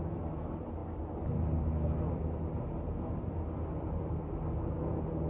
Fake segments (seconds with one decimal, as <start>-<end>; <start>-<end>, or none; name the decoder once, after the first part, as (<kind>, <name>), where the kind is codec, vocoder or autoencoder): none